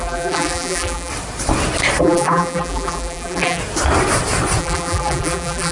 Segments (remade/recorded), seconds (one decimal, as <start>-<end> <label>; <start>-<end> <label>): 0.0-1.1 remade; 1.1-2.0 recorded; 2.0-3.6 remade; 3.6-4.6 recorded; 4.6-5.7 remade